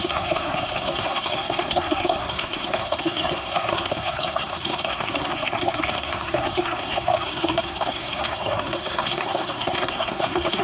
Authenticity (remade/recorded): remade